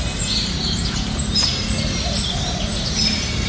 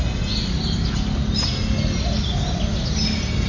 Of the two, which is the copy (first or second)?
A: first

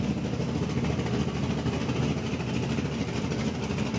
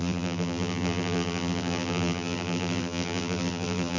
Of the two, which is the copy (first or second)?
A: second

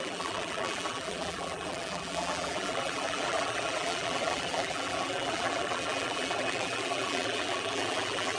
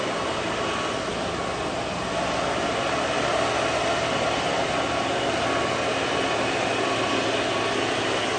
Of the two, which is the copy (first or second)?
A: first